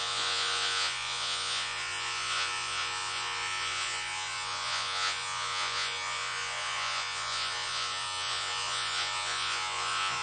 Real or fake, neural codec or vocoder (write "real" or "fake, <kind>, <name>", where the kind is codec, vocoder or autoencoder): fake, vocoder, Vocos